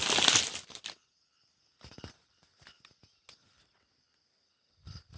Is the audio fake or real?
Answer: real